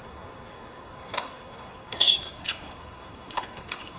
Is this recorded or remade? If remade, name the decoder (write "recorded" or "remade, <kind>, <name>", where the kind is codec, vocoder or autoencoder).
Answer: remade, codec, SNAC